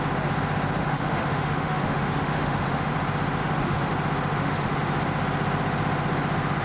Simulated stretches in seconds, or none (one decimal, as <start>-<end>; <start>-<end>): 0.8-2.9; 3.4-3.9; 4.3-4.8